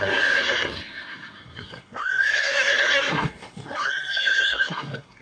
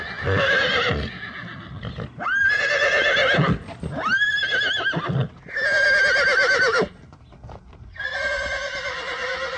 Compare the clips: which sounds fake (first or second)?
first